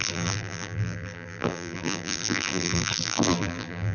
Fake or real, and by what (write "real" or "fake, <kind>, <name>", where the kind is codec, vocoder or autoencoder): fake, vocoder, BigVGAN v2